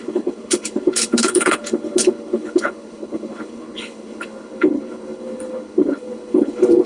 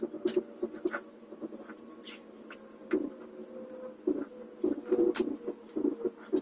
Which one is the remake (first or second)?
first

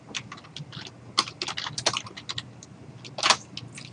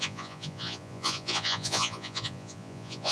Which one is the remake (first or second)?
second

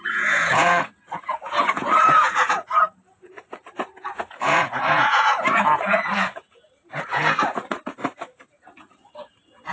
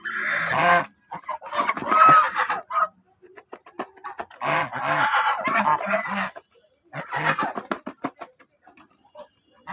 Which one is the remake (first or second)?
first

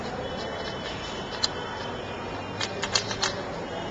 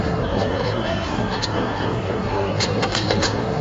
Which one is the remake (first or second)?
second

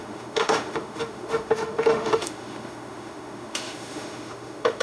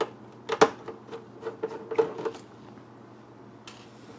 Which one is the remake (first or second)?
first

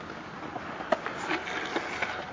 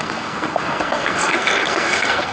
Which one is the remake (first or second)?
second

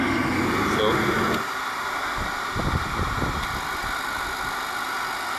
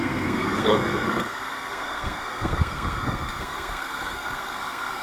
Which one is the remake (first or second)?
second